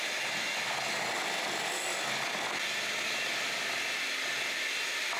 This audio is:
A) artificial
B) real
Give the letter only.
B